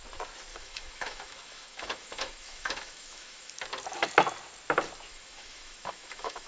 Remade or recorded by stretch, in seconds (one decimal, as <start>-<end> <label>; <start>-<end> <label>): 0.0-0.5 recorded; 0.5-3.5 remade; 3.5-5.1 recorded; 5.1-6.5 remade